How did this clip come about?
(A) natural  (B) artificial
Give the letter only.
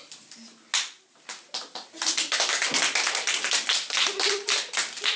A